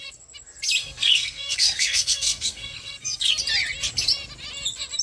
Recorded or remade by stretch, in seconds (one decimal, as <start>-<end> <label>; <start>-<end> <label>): 0.0-0.8 recorded; 0.8-3.3 remade; 3.3-5.0 recorded